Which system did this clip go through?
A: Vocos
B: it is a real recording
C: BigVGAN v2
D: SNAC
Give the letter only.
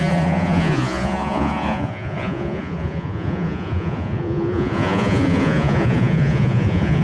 A